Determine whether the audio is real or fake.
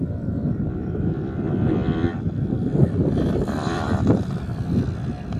real